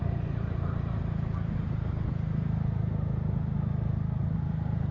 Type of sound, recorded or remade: remade